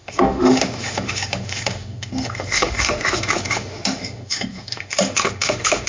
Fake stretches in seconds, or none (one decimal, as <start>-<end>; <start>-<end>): 0.0-5.9